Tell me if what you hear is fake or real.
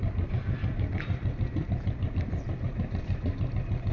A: real